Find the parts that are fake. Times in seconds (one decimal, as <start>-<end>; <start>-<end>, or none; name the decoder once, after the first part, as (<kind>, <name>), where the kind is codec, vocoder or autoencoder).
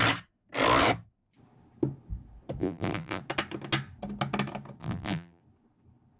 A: 2.6-3.2 (vocoder, BigVGAN v2); 4.8-5.4